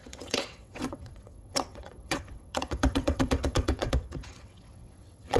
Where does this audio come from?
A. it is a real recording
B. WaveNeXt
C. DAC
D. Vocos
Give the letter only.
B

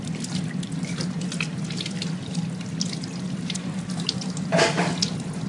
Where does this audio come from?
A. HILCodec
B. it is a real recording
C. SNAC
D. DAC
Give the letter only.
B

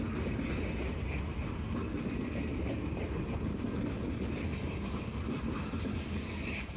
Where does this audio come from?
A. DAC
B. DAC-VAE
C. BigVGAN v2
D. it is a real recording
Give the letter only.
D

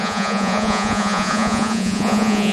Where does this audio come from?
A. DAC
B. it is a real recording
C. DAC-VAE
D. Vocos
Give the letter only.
D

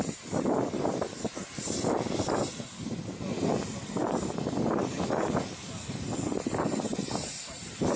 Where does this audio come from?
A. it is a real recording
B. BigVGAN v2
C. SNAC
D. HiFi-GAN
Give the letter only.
A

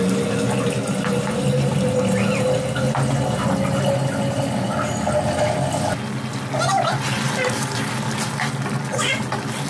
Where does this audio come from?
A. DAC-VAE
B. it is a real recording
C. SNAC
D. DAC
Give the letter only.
B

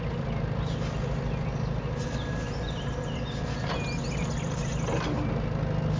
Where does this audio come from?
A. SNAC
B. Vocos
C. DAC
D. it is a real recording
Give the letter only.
D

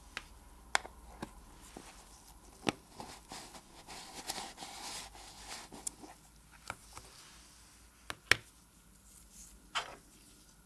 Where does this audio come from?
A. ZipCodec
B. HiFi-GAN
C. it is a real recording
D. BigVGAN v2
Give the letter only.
C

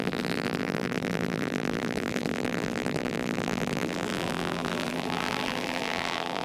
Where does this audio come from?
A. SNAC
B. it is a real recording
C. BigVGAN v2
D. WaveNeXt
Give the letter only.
C